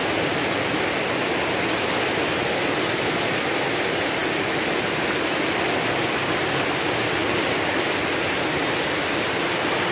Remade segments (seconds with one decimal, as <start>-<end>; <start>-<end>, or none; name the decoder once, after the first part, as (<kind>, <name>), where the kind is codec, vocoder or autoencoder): none